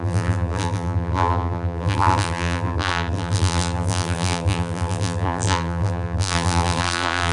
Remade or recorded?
remade